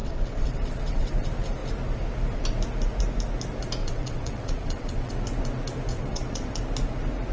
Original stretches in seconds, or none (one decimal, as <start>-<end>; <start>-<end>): 1.1-3.8; 5.1-5.9; 6.6-7.3